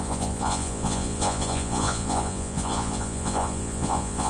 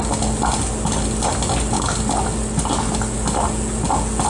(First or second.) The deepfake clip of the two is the first